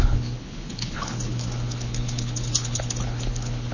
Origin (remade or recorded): remade